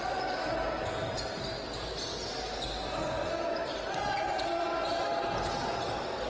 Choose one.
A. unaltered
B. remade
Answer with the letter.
A